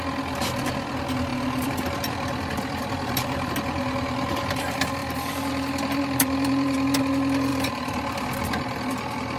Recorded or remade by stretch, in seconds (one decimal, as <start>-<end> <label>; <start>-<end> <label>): 0.0-1.3 recorded; 1.3-3.5 remade; 3.5-5.0 recorded; 5.0-7.0 remade; 7.0-7.5 recorded; 7.5-9.4 remade